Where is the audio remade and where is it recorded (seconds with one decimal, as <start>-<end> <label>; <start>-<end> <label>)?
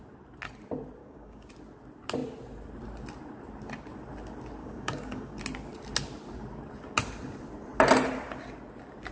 0.0-1.0 recorded; 1.0-1.5 remade; 1.5-4.6 recorded; 4.6-5.4 remade; 5.4-9.1 recorded